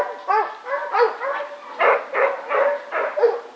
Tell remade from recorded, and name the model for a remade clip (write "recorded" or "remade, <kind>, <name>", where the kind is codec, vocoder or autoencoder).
recorded